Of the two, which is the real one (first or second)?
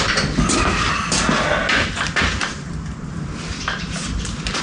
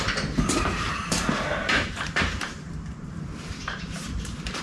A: first